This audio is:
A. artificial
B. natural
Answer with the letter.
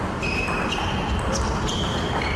B